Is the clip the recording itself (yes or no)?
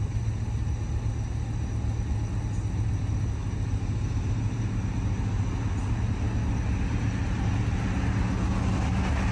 yes